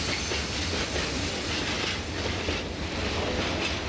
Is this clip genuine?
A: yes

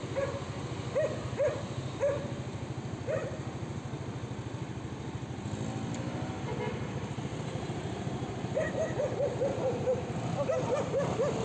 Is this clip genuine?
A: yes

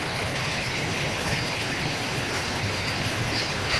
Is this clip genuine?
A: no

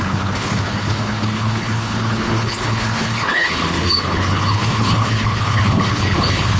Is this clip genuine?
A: no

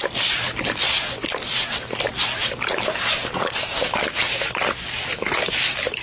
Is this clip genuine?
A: yes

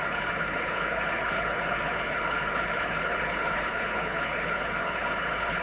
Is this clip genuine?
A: no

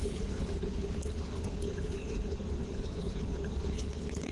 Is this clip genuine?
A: no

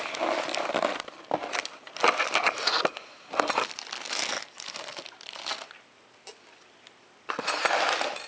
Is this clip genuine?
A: yes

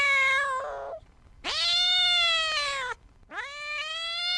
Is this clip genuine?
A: yes